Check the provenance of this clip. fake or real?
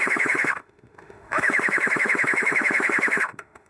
fake